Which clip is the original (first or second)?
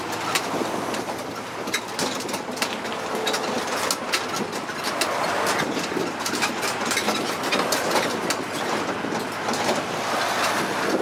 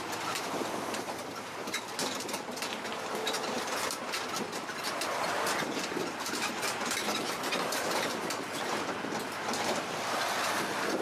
first